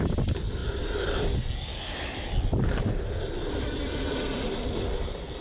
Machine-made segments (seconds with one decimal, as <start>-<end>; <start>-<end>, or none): none

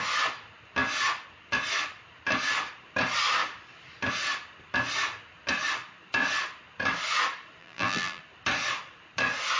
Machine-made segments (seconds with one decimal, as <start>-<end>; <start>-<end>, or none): 7.6-8.2